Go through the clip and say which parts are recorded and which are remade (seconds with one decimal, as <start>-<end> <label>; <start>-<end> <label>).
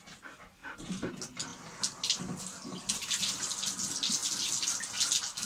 0.0-0.6 recorded; 0.6-1.1 remade; 1.1-3.0 recorded; 3.0-3.5 remade; 3.5-5.5 recorded